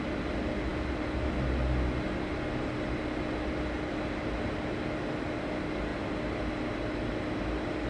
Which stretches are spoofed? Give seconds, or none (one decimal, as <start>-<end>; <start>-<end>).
5.9-6.5

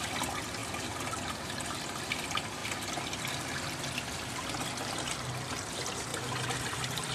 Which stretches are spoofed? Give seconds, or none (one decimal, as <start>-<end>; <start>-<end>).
0.6-1.5

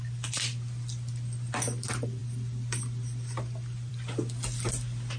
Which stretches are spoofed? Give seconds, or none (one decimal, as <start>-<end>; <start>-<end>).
none

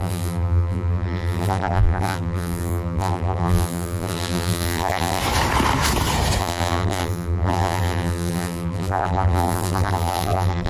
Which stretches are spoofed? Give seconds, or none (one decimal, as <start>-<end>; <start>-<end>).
0.0-5.2; 6.4-10.7

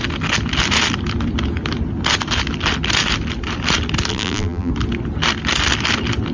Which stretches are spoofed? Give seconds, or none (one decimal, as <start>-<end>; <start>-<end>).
4.1-4.7

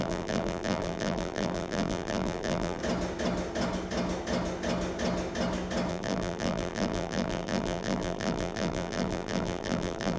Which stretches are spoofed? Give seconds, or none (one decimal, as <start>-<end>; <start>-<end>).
0.0-2.8; 5.9-10.2

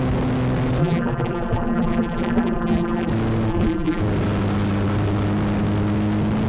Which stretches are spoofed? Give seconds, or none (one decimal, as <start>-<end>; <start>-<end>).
0.8-3.1; 3.5-4.0